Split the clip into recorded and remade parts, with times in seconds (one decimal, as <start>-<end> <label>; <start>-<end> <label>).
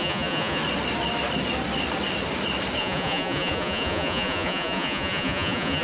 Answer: 0.0-0.6 remade; 0.6-2.8 recorded; 2.8-5.8 remade